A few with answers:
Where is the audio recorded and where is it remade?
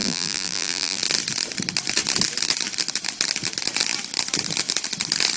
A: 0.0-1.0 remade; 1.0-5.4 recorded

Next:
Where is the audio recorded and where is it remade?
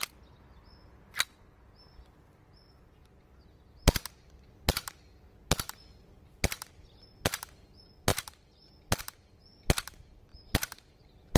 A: 0.0-11.4 recorded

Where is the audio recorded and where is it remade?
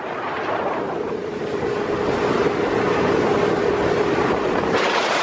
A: 0.0-1.2 remade; 1.2-4.0 recorded; 4.0-5.2 remade